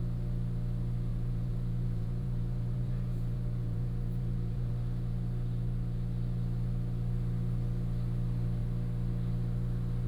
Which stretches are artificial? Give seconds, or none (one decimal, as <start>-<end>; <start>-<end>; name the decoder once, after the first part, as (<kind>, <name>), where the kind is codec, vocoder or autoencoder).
1.1-4.7 (vocoder, Vocos)